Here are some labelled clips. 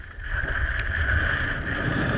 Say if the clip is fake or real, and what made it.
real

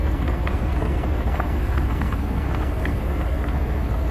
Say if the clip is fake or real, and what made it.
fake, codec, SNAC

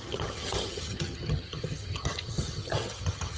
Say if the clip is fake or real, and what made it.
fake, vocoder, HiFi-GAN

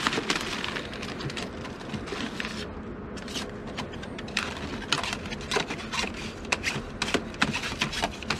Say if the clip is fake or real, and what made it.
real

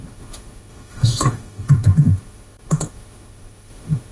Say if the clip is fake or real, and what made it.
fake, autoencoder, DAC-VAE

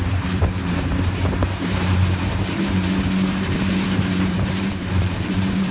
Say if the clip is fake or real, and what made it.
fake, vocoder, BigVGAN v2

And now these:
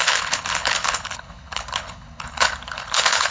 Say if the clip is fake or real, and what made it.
fake, codec, HILCodec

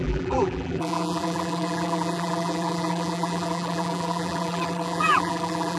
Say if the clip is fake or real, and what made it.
fake, vocoder, BigVGAN v2